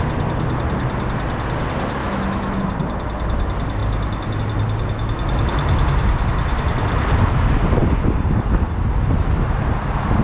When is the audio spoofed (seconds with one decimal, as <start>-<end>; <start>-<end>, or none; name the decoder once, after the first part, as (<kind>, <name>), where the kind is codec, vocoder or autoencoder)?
2.0-2.6 (autoencoder, DAC-VAE)